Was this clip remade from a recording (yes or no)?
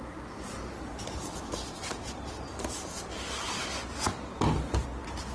no